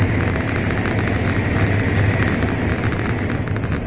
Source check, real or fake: real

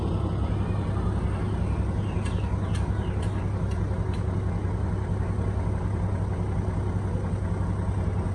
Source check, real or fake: real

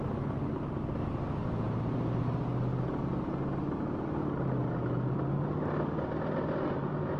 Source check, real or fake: real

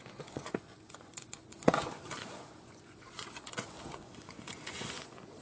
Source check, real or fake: fake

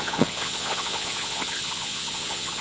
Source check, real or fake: fake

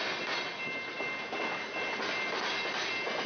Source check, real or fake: real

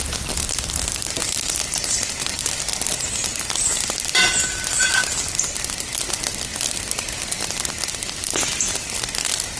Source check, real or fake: real